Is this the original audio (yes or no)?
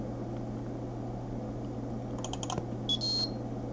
yes